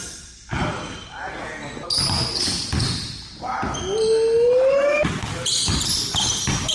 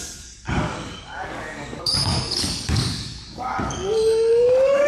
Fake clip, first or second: second